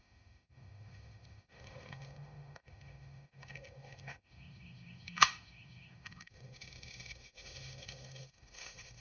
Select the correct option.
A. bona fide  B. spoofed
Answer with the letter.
B